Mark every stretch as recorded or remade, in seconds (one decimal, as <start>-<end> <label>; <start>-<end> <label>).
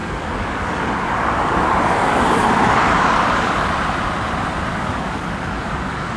0.0-3.7 remade; 3.7-4.7 recorded; 4.7-6.2 remade